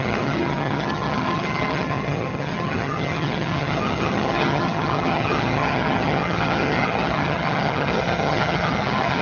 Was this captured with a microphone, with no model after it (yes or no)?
no